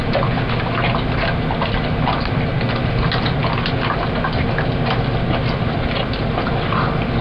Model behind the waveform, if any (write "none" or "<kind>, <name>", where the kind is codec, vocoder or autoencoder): none